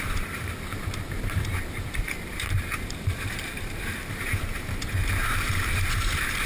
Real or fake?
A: fake